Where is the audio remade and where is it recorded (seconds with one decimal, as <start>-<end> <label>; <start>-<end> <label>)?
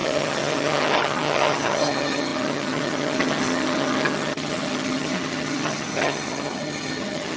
0.0-7.4 remade